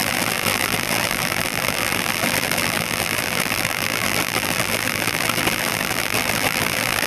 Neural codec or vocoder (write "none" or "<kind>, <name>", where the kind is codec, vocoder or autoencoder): vocoder, BigVGAN v2